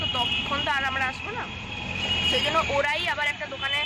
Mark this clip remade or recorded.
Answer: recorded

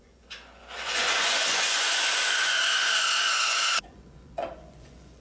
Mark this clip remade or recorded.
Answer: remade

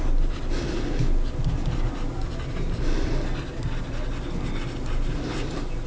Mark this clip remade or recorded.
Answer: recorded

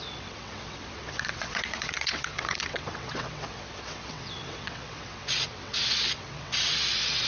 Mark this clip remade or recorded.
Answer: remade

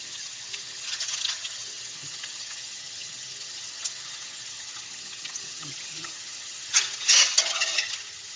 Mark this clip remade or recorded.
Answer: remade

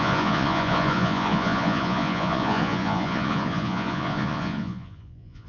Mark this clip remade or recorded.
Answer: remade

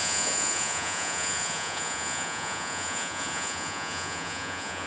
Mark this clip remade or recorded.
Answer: remade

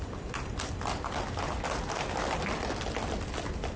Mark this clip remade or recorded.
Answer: recorded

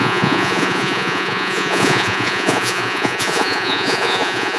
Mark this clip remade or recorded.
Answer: remade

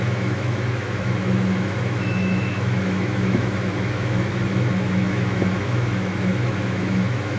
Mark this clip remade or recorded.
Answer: remade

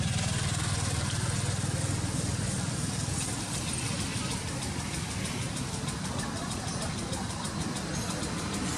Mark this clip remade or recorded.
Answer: recorded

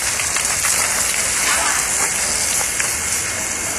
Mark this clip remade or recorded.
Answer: recorded